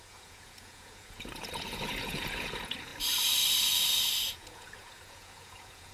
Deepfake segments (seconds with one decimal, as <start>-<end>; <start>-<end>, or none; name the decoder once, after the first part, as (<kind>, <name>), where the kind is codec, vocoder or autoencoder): 0.0-2.9 (vocoder, Vocos); 4.3-5.9